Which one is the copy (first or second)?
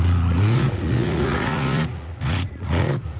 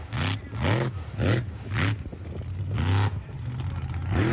first